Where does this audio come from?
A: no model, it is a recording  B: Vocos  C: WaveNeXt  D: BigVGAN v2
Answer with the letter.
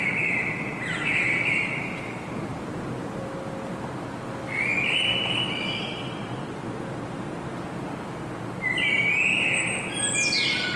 A